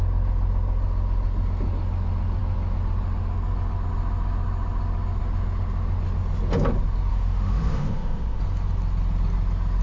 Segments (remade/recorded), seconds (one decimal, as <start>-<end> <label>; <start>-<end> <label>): 0.0-7.1 recorded; 7.1-8.4 remade; 8.4-9.8 recorded